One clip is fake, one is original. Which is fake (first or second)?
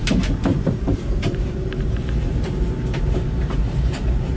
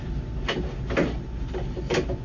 first